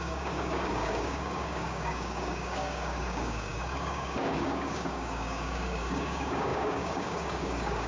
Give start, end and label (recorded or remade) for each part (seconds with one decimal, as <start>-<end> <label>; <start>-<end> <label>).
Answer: 0.0-7.9 remade